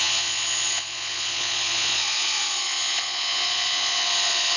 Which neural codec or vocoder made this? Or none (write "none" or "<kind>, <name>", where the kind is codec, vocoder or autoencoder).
vocoder, Vocos